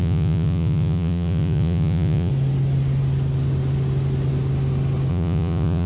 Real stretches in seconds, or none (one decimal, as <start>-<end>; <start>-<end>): 2.3-5.1